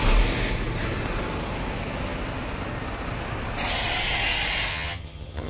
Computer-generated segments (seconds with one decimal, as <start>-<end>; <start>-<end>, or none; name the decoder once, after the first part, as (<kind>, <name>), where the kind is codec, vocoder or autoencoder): 4.7-5.5 (vocoder, HiFi-GAN)